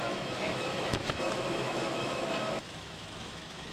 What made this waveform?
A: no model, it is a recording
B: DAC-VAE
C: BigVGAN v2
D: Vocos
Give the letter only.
B